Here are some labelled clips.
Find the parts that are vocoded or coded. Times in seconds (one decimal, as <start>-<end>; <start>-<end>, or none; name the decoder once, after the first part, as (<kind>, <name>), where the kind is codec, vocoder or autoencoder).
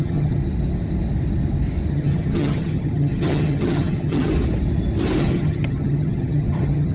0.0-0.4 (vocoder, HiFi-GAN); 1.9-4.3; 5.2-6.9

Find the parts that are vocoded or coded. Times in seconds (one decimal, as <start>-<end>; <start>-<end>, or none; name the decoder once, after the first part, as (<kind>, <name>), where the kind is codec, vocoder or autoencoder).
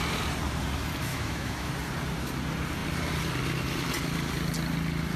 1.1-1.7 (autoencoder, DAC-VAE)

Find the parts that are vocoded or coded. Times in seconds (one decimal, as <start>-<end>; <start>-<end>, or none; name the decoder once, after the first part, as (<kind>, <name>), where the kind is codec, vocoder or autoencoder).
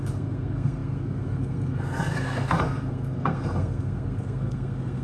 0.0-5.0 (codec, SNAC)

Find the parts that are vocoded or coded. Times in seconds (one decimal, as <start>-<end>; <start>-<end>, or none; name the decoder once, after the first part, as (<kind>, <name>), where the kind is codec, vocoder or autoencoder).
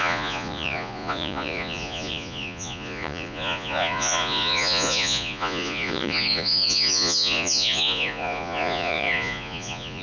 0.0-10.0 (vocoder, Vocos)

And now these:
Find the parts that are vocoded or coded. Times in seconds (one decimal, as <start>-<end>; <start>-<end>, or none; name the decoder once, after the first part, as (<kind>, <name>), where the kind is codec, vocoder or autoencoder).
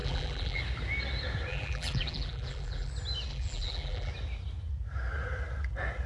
0.0-0.6 (vocoder, BigVGAN v2); 1.5-2.9; 3.3-4.1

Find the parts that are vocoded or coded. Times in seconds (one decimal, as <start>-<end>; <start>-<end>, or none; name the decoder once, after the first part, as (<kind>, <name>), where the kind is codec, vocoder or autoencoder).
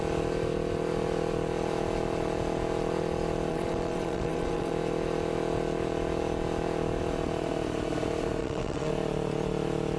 3.5-4.7 (vocoder, WaveNeXt); 8.4-8.9